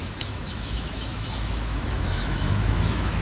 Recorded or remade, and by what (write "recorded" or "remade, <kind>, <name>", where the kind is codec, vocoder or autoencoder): remade, autoencoder, DAC-VAE